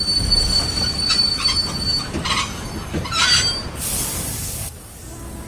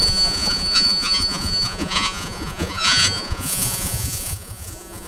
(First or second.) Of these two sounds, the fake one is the second